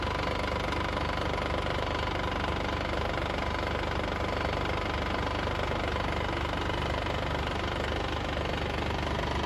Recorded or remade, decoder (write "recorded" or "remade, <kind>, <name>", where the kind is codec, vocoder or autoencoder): recorded